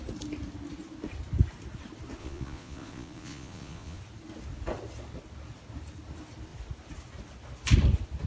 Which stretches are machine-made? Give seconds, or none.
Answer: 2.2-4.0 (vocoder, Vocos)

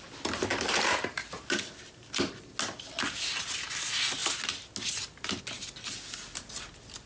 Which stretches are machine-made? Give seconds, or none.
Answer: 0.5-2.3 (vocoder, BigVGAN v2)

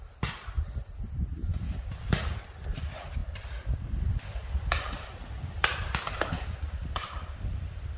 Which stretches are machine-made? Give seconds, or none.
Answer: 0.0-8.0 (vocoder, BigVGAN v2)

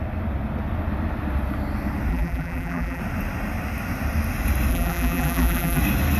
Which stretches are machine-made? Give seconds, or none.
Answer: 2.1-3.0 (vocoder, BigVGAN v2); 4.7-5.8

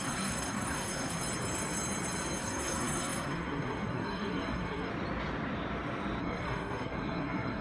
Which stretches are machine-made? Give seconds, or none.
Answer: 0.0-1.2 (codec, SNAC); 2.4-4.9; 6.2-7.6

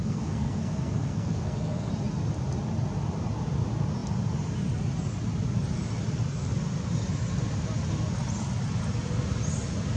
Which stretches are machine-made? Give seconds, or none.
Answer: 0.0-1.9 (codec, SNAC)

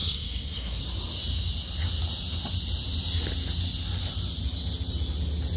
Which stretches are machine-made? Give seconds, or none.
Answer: 0.0-0.8 (codec, SNAC)